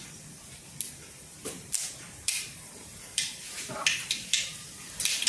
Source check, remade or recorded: remade